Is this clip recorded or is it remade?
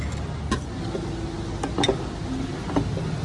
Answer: recorded